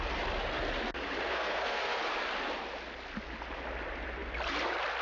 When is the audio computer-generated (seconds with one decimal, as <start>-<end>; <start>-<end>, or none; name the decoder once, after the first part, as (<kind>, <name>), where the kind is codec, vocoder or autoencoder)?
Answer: 1.3-2.0 (codec, SNAC)